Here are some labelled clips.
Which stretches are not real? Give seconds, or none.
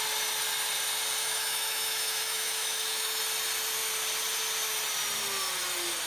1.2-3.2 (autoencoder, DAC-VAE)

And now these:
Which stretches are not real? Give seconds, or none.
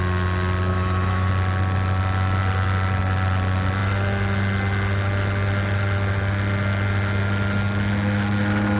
0.7-1.3 (autoencoder, DAC-VAE)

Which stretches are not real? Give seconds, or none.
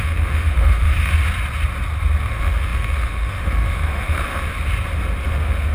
0.0-1.1 (autoencoder, DAC-VAE); 2.2-4.5; 5.3-5.7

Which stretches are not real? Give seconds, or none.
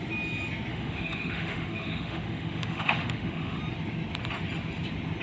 0.7-3.6 (autoencoder, DAC-VAE)